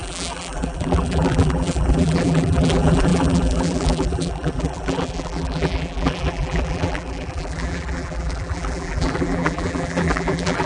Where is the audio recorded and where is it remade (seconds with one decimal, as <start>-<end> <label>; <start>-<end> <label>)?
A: 0.0-10.7 remade